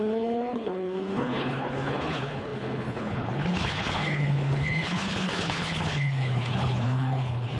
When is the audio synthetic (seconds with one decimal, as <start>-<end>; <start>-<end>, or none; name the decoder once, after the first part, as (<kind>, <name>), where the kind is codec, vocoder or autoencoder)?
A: 0.0-7.6 (codec, HILCodec)